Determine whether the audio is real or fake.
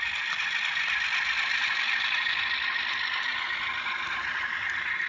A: fake